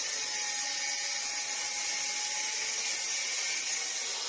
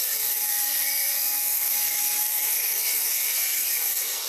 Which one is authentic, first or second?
first